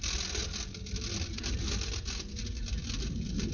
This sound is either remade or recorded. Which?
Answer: recorded